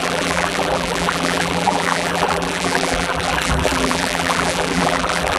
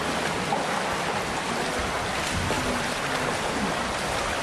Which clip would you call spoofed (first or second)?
first